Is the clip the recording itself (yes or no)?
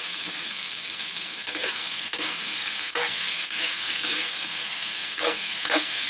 no